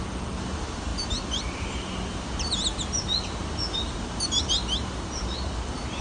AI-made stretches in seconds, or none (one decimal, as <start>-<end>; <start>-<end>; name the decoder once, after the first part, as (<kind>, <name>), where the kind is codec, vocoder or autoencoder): none

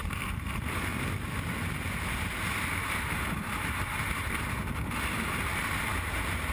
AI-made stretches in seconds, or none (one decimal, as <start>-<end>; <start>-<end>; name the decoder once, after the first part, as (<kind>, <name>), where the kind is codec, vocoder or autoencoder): 0.0-5.9 (vocoder, BigVGAN v2)

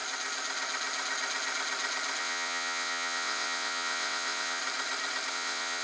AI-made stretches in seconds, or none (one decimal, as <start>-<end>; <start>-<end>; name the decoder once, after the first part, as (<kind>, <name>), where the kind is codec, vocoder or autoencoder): 2.2-4.6 (vocoder, WaveNeXt); 5.3-5.8

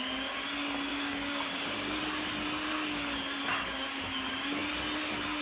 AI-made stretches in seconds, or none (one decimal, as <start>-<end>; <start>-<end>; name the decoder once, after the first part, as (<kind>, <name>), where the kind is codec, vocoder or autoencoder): 0.9-2.0 (codec, DAC)